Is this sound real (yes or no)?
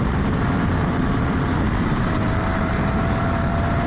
no